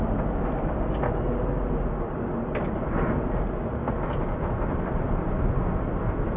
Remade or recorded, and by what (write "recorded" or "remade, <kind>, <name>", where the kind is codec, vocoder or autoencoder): remade, vocoder, BigVGAN v2